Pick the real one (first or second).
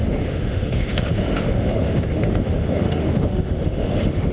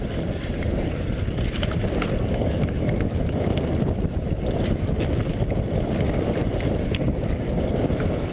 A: second